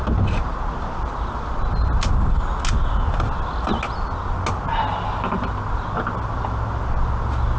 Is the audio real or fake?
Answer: real